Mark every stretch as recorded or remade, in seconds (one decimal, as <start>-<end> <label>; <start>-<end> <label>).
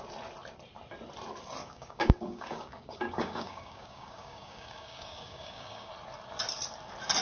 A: 0.0-1.6 recorded; 1.6-5.9 remade; 5.9-7.2 recorded